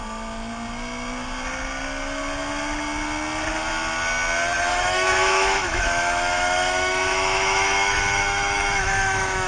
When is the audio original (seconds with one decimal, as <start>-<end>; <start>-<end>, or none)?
0.0-4.7